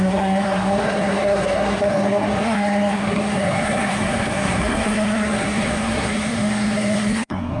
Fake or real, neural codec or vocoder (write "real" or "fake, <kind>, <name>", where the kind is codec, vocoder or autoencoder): fake, codec, SNAC